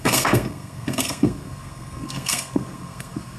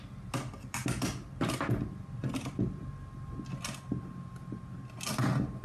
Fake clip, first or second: first